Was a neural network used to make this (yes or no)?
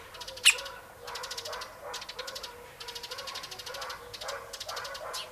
no